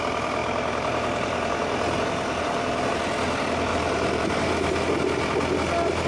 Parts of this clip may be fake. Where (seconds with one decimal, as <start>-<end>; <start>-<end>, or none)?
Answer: 0.4-2.9; 3.7-4.5